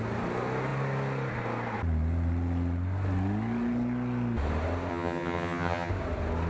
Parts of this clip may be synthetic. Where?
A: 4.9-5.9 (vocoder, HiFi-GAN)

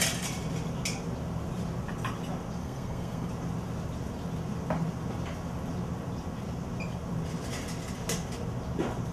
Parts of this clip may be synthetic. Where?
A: 2.6-3.3 (codec, SNAC)

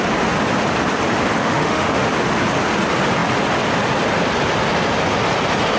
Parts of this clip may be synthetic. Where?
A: 1.4-2.1 (autoencoder, DAC-VAE)